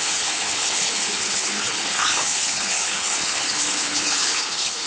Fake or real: fake